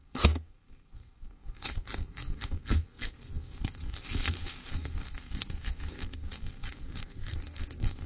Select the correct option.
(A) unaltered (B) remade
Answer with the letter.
B